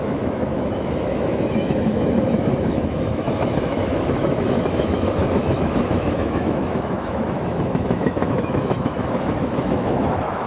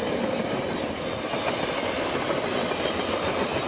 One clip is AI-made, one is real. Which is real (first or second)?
second